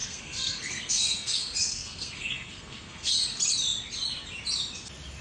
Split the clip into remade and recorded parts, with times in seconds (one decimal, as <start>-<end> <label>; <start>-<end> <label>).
0.0-3.1 remade; 3.1-5.2 recorded